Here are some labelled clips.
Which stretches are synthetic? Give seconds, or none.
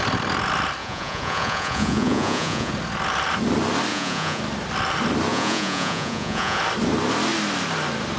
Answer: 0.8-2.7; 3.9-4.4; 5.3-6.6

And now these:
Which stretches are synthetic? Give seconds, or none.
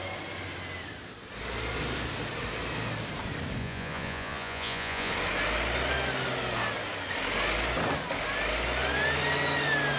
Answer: 3.6-5.1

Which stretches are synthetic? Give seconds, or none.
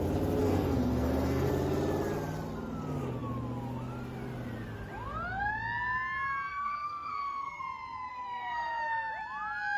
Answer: 0.4-1.5; 6.5-7.6; 8.1-9.1